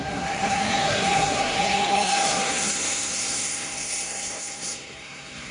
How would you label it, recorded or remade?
remade